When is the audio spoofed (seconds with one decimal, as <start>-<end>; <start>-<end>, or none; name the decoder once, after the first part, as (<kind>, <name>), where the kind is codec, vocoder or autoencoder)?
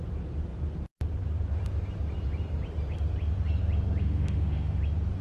4.0-4.8 (autoencoder, DAC-VAE)